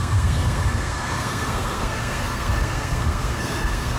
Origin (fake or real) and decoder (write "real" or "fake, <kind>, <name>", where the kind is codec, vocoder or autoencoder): fake, codec, SNAC